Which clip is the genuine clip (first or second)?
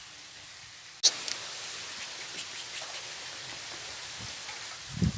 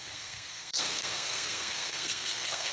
first